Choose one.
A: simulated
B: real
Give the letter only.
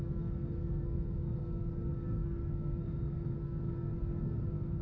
A